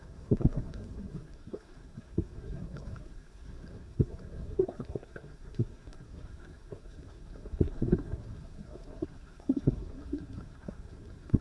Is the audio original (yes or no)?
no